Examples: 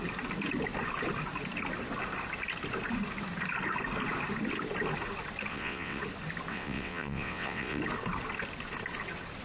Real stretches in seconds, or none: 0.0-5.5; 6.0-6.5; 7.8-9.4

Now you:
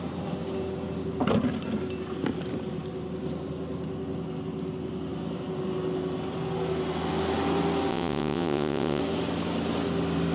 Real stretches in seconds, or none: 0.0-7.9; 9.0-10.3

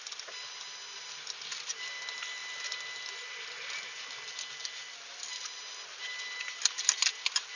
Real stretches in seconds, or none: 0.0-7.6